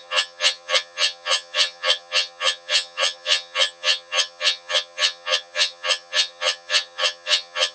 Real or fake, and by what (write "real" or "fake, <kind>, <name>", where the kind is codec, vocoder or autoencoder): fake, vocoder, HiFi-GAN